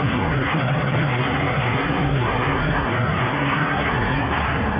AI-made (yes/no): yes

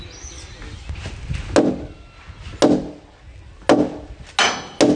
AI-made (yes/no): no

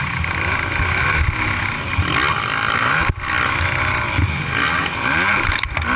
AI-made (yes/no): no